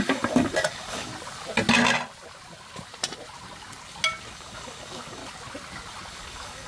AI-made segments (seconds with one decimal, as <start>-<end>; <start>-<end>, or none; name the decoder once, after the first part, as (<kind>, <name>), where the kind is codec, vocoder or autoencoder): 0.0-1.1 (codec, DAC); 4.3-5.2; 6.1-6.7